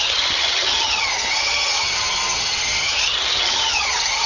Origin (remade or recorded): remade